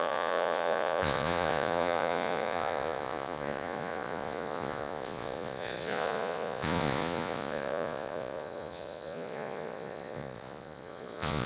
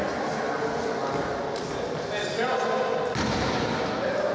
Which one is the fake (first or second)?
first